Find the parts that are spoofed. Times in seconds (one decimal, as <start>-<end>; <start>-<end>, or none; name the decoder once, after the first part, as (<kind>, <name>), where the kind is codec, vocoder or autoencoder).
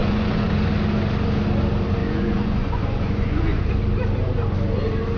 0.0-0.5 (vocoder, Vocos); 2.0-3.7